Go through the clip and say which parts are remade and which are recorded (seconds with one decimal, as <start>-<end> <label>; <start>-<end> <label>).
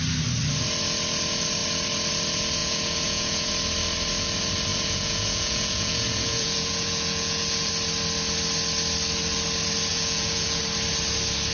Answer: 0.0-2.6 recorded; 2.6-3.5 remade; 3.5-4.7 recorded; 4.7-7.7 remade; 7.7-9.9 recorded; 9.9-10.6 remade; 10.6-11.5 recorded